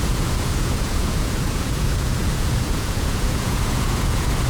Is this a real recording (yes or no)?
no